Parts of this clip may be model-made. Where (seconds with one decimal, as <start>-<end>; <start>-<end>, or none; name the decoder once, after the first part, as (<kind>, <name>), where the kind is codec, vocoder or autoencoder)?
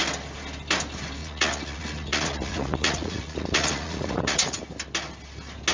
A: 1.2-4.6 (vocoder, Vocos)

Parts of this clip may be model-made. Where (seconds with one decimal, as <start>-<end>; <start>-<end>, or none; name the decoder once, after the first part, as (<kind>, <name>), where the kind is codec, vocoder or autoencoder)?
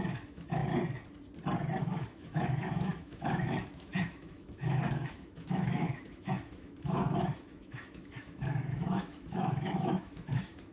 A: 0.0-0.6 (autoencoder, DAC-VAE); 1.8-10.7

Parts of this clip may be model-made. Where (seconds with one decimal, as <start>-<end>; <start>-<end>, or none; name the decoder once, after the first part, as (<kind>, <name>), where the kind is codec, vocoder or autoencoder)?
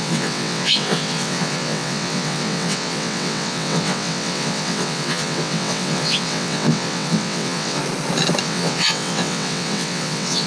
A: 0.0-7.8 (vocoder, WaveNeXt); 8.4-10.5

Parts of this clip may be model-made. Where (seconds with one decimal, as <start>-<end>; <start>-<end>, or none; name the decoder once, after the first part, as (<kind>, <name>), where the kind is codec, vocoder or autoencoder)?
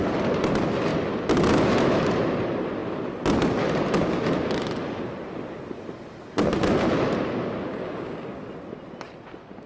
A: 7.7-8.4 (codec, DAC)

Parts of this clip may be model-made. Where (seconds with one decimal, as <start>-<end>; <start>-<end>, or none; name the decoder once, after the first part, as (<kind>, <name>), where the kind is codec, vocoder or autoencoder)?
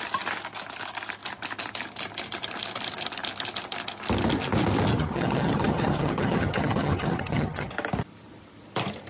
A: 4.9-7.7 (vocoder, HiFi-GAN)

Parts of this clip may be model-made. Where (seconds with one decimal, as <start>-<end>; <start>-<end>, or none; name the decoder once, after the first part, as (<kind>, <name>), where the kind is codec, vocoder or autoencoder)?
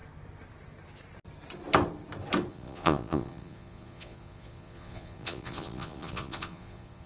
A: 2.5-7.1 (vocoder, Vocos)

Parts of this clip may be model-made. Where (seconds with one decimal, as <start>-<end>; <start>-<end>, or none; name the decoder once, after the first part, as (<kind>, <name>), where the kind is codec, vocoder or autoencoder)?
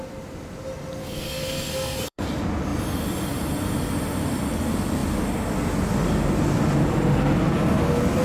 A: 1.0-2.3 (codec, SNAC)